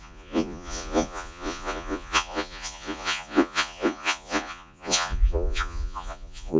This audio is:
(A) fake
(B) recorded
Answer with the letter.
A